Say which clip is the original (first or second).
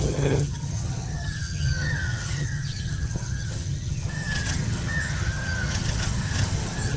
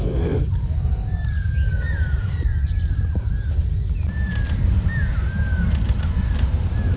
second